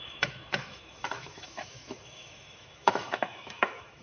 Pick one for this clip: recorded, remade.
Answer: remade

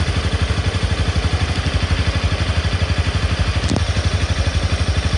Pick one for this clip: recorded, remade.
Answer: recorded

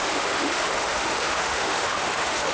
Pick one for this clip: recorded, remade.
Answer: remade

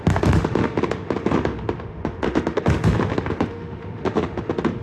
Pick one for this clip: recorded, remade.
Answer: remade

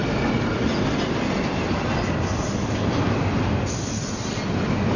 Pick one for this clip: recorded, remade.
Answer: recorded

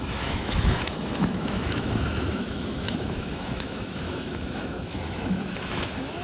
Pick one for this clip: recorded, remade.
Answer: remade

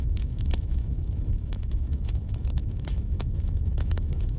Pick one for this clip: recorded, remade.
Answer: remade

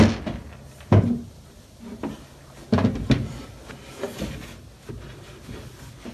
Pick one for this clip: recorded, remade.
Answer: recorded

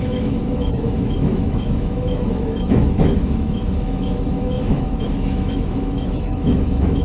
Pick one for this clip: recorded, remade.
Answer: remade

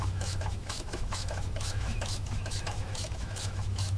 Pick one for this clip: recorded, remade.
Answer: remade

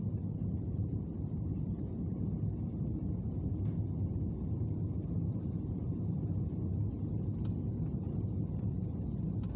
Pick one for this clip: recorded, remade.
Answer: recorded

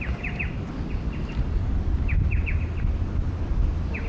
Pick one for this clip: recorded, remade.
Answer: recorded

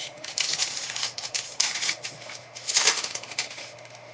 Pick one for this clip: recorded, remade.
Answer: remade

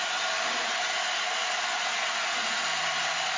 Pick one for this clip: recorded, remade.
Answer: recorded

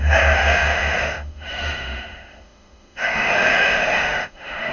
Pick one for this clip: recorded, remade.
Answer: remade